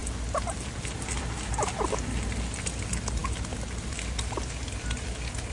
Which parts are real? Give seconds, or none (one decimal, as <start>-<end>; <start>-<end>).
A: 0.0-5.5